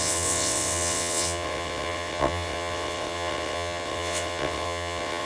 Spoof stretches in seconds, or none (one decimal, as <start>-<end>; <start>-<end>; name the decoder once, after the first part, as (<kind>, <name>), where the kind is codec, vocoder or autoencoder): 0.0-5.3 (vocoder, WaveNeXt)